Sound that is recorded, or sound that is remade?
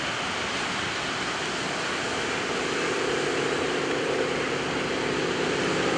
remade